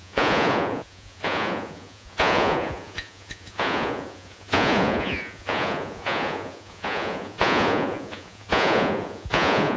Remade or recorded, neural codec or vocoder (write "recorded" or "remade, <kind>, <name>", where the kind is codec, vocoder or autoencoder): remade, vocoder, Vocos